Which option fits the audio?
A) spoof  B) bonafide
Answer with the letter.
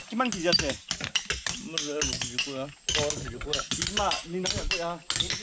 B